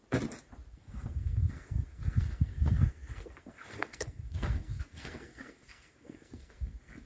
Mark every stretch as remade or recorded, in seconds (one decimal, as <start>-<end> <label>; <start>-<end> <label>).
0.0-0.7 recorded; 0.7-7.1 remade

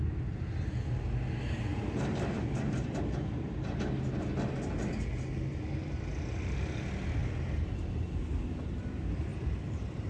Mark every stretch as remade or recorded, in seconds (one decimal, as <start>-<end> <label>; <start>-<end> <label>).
0.0-1.7 recorded; 1.7-3.5 remade; 3.5-9.3 recorded; 9.3-10.1 remade

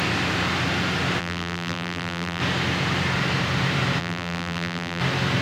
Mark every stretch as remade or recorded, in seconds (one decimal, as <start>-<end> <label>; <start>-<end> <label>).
0.0-1.2 recorded; 1.2-2.4 remade; 2.4-4.0 recorded; 4.0-5.0 remade; 5.0-5.4 recorded